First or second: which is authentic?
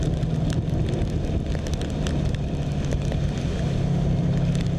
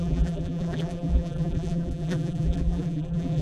first